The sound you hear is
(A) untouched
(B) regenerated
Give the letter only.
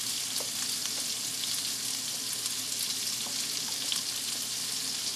A